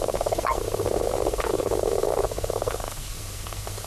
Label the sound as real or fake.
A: fake